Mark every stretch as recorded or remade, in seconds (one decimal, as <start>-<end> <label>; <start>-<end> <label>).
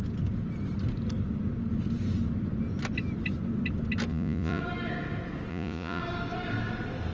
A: 0.0-4.1 recorded; 4.1-4.6 remade; 4.6-5.5 recorded; 5.5-6.0 remade; 6.0-7.1 recorded